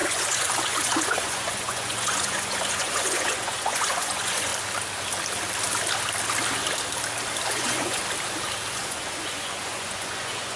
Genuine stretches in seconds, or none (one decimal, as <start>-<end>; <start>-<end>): 4.5-7.5; 8.0-8.7